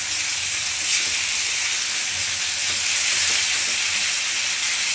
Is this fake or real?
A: real